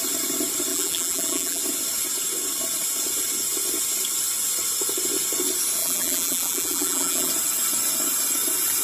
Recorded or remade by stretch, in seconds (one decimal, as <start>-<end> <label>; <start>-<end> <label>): 0.0-0.7 recorded; 0.7-1.6 remade; 1.6-5.8 recorded; 5.8-7.3 remade; 7.3-8.8 recorded